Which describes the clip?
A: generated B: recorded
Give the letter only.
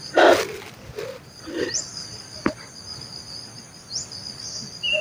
B